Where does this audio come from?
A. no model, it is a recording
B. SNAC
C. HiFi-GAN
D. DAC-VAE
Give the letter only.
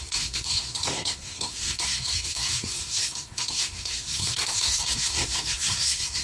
B